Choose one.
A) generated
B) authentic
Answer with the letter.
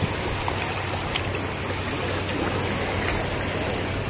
B